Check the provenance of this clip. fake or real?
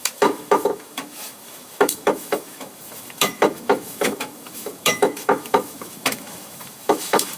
fake